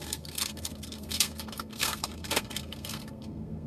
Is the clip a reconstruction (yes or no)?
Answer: yes